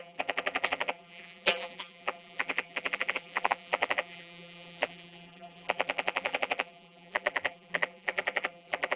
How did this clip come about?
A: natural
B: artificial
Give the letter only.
B